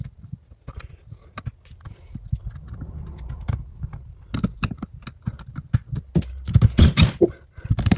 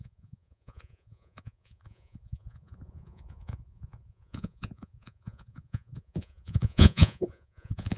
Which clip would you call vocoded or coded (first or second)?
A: second